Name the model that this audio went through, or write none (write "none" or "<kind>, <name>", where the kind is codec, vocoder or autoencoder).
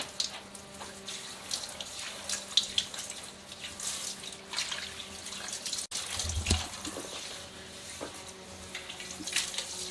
none